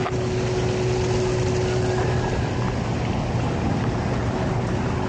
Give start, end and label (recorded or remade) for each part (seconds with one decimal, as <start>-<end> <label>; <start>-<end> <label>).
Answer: 0.0-4.2 recorded; 4.2-5.1 remade